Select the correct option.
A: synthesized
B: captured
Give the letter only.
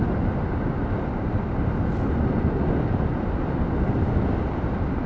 B